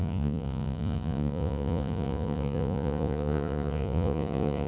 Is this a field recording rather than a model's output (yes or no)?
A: no